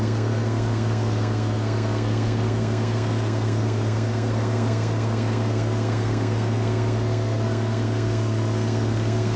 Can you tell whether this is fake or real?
fake